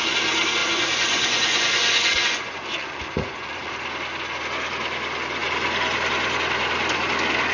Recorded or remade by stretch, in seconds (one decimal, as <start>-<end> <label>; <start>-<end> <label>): 0.0-0.6 recorded; 0.6-3.7 remade; 3.7-7.5 recorded